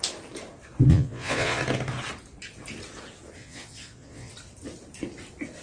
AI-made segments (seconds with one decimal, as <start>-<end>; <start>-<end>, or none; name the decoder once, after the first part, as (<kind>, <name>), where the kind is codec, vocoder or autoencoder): 0.9-1.6 (vocoder, Vocos); 3.4-4.3